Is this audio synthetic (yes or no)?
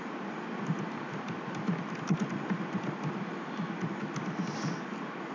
no